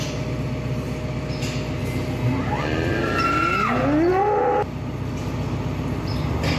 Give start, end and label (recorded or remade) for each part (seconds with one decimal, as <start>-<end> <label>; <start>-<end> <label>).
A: 0.0-6.6 recorded